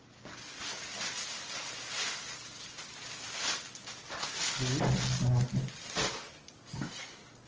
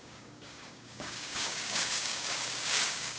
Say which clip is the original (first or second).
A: first